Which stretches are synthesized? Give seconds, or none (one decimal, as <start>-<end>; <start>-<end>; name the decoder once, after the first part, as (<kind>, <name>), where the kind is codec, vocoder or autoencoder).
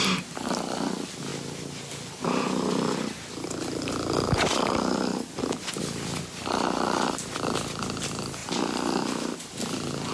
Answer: none